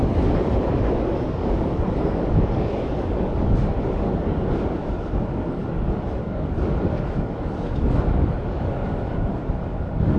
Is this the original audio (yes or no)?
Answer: no